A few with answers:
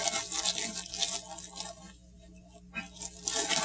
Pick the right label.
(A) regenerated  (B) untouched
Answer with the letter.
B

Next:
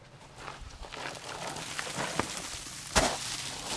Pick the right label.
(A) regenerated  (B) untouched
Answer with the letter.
B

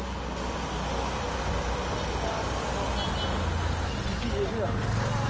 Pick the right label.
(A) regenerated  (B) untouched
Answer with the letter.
B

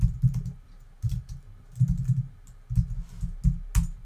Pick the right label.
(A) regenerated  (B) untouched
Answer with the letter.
B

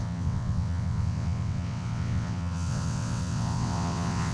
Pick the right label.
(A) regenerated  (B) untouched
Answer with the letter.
A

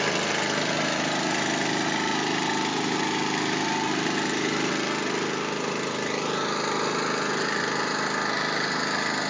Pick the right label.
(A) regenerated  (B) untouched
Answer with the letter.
B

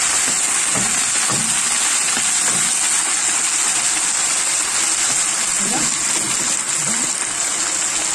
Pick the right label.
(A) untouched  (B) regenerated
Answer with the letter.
A